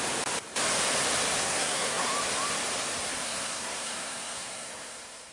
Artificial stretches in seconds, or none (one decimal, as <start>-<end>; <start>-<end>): 1.4-2.1; 3.1-5.3